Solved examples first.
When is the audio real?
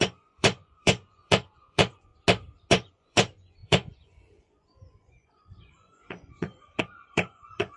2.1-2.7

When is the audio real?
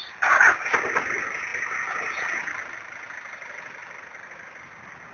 0.0-5.1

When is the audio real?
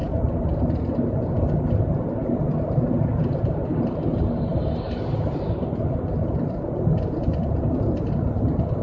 0.0-8.8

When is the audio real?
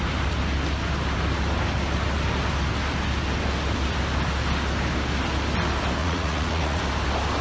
0.0-6.0; 6.8-7.4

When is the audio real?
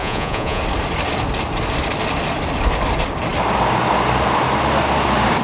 0.6-5.4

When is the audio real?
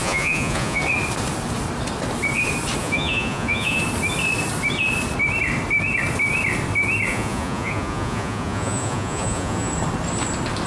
0.8-2.8; 3.8-7.1; 9.7-10.7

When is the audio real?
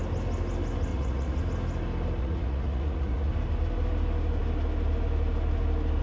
0.0-0.9; 1.4-2.2; 3.3-6.0